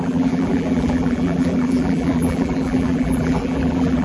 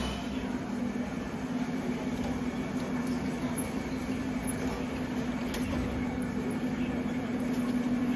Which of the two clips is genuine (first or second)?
second